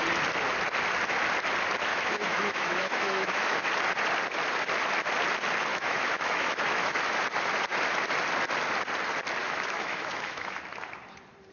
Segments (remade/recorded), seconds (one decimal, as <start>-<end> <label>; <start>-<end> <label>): 0.0-1.9 recorded; 1.9-3.7 remade; 3.7-5.7 recorded; 5.7-7.1 remade; 7.1-9.4 recorded; 9.4-10.6 remade; 10.6-11.5 recorded